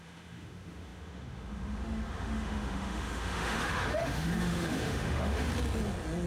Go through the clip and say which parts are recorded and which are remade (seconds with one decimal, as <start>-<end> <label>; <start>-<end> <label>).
0.0-5.5 remade; 5.5-6.3 recorded

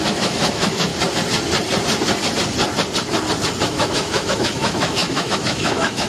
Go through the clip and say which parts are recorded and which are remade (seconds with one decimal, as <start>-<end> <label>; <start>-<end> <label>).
0.0-0.9 remade; 0.9-3.6 recorded; 3.6-6.1 remade

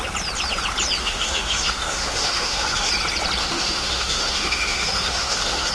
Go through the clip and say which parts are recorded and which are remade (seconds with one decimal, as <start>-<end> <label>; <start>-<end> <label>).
0.0-1.0 recorded; 1.0-2.9 remade; 2.9-3.4 recorded; 3.4-5.7 remade

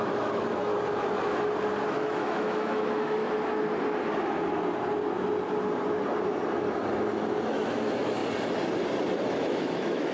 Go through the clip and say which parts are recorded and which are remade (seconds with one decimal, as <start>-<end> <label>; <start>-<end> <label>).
0.0-0.7 remade; 0.7-1.9 recorded; 1.9-3.2 remade; 3.2-7.5 recorded; 7.5-8.2 remade; 8.2-9.3 recorded; 9.3-10.1 remade

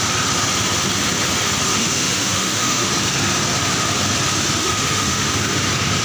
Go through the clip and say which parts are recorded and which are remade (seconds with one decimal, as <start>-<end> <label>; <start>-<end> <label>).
0.0-1.7 recorded; 1.7-2.9 remade; 2.9-4.6 recorded; 4.6-5.3 remade; 5.3-6.0 recorded

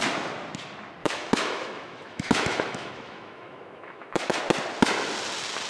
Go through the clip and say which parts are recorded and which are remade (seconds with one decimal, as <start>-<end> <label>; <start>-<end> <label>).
0.0-1.0 recorded; 1.0-4.4 remade; 4.4-5.7 recorded

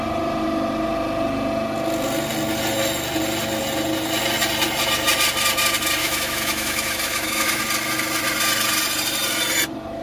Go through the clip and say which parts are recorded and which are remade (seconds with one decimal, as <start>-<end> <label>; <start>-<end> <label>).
0.0-6.0 recorded; 6.0-7.6 remade; 7.6-10.0 recorded

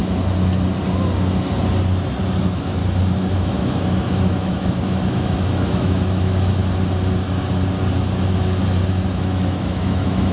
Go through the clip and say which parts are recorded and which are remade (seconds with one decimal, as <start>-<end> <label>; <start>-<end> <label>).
0.0-2.4 recorded; 2.4-2.8 remade; 2.8-3.3 recorded; 3.3-6.6 remade; 6.6-8.9 recorded; 8.9-10.3 remade